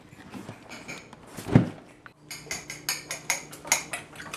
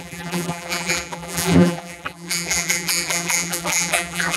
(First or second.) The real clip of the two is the first